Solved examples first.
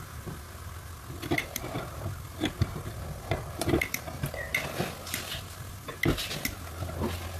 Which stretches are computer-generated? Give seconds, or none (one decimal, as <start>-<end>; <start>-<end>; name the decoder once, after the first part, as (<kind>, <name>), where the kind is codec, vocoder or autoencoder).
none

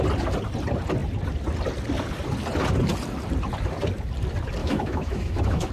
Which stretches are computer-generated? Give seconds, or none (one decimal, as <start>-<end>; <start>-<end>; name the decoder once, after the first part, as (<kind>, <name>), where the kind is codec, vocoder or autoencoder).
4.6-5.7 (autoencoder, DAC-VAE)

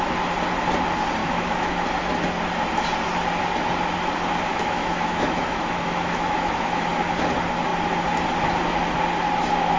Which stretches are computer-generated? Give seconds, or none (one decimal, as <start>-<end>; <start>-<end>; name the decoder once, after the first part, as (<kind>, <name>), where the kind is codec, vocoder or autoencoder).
1.2-1.8 (autoencoder, DAC-VAE); 4.5-6.9

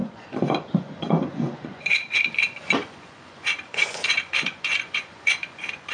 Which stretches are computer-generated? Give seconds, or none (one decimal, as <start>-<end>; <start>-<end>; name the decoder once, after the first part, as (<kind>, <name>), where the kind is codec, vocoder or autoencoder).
0.0-5.9 (vocoder, Vocos)

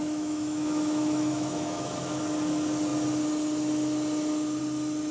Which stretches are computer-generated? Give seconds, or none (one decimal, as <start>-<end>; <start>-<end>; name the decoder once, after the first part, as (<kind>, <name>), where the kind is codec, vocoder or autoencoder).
0.0-2.2 (autoencoder, DAC-VAE)